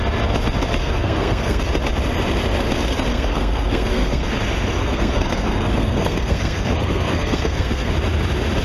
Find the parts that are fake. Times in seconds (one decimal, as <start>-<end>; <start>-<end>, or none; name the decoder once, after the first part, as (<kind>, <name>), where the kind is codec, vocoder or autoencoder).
0.8-1.6 (codec, SNAC); 3.1-4.3; 4.8-7.9